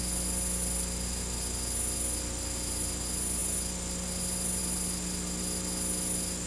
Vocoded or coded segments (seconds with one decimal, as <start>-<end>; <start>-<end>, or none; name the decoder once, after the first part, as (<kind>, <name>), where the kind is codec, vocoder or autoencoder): none